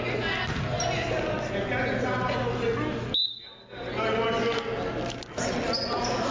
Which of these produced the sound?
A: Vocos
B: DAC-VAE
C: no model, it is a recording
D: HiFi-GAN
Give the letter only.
C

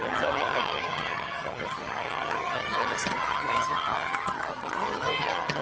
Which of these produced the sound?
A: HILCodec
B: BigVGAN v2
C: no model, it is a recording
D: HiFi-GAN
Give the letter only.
D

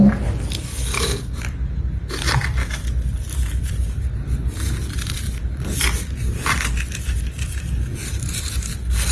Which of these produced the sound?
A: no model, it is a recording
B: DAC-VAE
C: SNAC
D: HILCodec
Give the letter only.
A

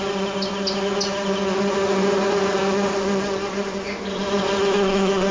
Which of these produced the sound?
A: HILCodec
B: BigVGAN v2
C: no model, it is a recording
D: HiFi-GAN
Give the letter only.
C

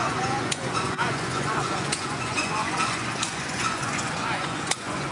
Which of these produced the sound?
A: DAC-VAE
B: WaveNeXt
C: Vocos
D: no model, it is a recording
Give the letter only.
C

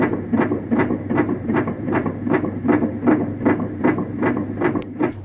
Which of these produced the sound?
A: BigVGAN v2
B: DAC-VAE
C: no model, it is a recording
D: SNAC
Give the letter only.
A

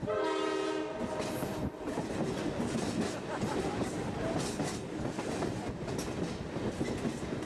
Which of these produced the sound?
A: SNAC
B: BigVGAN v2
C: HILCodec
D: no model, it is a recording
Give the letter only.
D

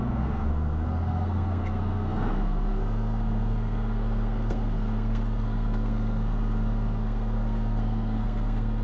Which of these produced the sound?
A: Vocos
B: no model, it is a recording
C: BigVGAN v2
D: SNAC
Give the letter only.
D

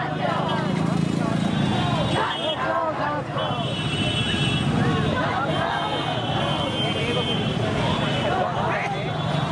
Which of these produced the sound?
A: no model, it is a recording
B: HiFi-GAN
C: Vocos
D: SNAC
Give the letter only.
A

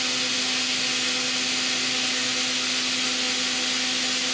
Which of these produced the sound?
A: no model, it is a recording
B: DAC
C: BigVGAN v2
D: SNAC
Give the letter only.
A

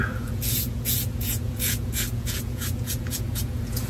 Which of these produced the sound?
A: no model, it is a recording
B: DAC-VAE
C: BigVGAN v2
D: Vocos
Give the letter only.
D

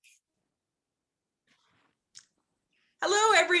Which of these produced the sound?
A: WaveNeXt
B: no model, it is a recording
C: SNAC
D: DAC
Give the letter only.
B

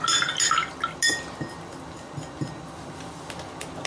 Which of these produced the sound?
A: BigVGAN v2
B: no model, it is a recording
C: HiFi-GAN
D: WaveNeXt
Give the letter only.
B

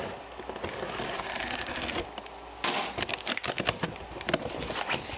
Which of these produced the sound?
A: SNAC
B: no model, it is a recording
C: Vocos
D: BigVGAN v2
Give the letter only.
B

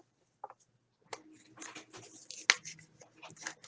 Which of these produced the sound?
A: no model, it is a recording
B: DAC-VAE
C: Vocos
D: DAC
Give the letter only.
A